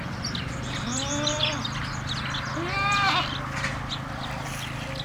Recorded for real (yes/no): yes